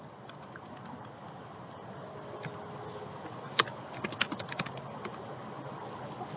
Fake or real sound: real